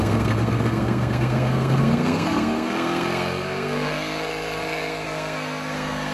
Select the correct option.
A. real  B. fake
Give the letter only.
B